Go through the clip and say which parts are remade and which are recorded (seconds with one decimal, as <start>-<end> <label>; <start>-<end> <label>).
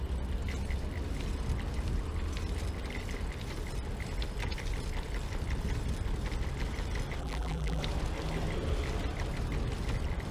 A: 0.0-7.2 recorded; 7.2-7.8 remade; 7.8-10.3 recorded